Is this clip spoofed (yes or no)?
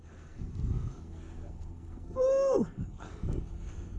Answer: yes